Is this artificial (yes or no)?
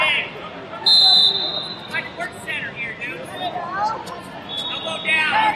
no